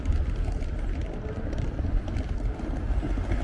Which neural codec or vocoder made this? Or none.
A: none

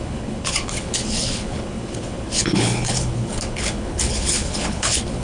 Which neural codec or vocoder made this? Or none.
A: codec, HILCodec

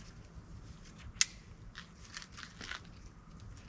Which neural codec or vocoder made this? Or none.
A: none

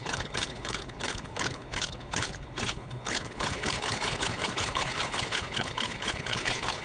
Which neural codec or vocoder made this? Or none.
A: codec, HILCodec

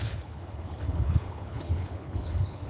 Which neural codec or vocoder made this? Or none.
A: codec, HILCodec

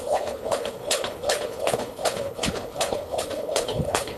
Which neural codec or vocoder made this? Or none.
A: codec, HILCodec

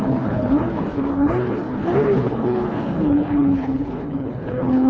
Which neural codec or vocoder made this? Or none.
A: codec, HILCodec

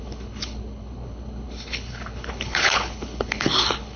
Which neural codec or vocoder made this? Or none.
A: codec, HILCodec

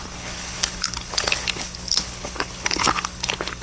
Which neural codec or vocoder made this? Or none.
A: codec, HILCodec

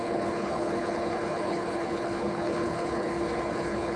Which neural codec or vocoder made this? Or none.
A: codec, HILCodec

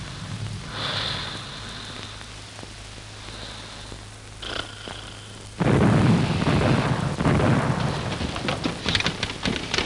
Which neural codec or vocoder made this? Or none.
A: none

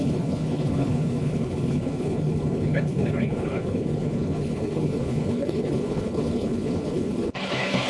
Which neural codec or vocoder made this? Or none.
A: codec, HILCodec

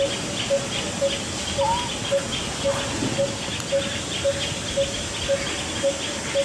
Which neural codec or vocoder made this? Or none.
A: none